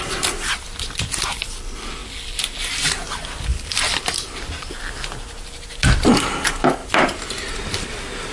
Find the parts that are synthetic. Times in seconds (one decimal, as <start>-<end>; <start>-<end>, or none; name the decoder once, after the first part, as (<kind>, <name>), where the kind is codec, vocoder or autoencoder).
none